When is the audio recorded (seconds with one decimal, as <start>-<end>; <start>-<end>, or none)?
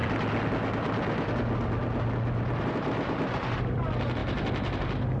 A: 0.0-2.6